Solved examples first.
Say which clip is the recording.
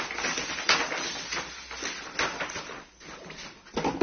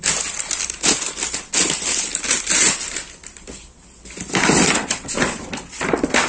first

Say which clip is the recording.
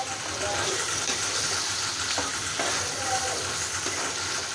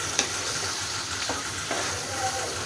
first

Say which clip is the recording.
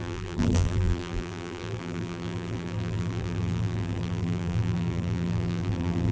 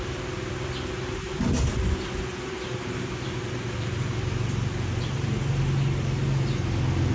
second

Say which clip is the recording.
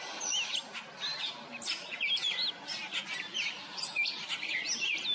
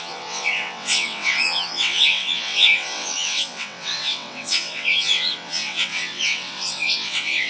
first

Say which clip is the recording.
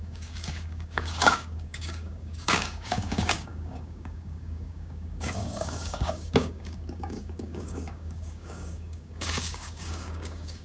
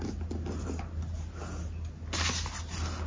second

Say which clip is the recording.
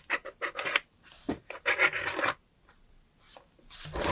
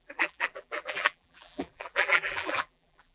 first